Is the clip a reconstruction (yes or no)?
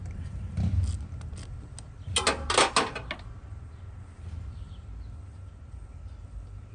no